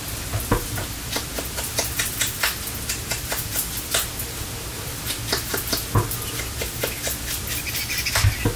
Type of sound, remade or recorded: recorded